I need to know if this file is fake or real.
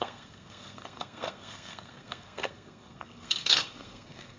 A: fake